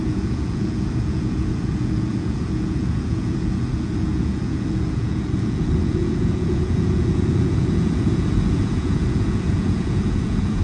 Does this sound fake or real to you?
fake